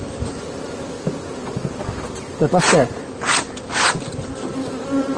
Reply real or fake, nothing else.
real